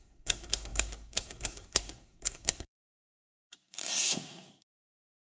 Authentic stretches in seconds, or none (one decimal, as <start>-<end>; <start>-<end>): none